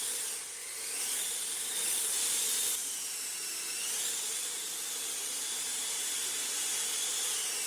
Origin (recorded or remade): recorded